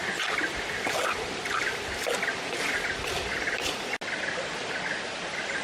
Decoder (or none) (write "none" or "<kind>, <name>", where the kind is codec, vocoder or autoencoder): none